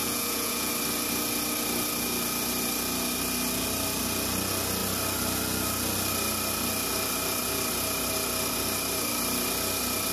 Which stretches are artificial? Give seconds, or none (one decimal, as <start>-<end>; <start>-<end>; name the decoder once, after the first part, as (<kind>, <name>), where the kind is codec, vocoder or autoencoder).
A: 0.0-0.7 (vocoder, Vocos)